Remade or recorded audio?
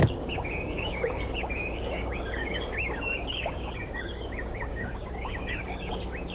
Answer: remade